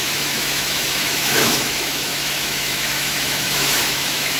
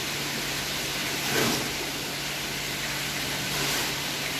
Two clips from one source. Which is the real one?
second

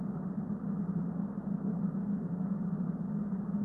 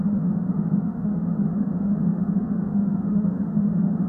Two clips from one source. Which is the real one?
first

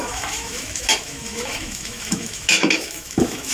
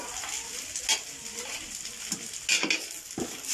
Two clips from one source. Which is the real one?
second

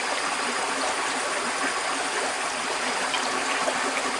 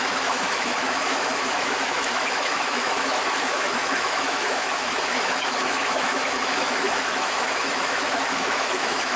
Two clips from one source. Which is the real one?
first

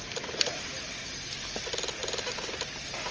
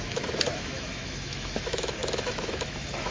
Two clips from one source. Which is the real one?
first